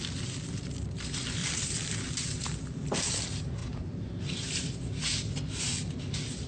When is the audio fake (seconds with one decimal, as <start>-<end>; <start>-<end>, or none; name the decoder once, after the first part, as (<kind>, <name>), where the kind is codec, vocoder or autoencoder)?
1.4-3.1 (vocoder, BigVGAN v2)